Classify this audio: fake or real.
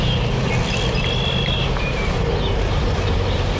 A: fake